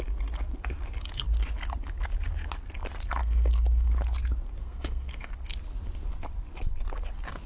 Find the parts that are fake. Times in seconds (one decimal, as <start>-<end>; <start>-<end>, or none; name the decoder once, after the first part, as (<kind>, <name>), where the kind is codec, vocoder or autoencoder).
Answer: 3.2-3.9 (codec, SNAC); 4.6-5.3